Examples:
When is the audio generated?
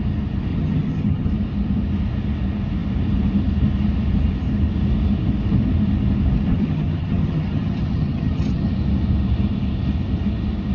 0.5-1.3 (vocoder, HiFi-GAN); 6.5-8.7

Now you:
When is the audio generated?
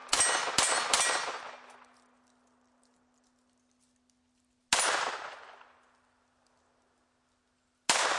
none